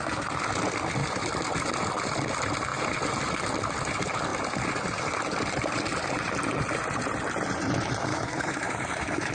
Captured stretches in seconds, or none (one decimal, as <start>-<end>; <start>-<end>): 0.0-8.1